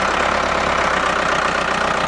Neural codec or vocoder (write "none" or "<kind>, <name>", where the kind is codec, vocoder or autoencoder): none